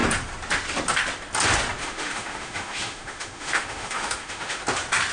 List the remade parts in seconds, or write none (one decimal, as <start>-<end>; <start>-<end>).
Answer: 1.8-4.6